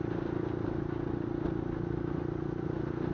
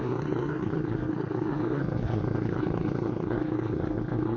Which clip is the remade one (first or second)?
second